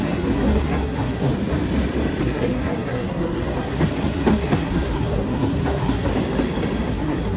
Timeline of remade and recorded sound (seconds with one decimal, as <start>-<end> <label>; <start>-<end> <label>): 0.0-1.3 remade; 1.3-2.2 recorded; 2.2-6.1 remade; 6.1-6.9 recorded; 6.9-7.4 remade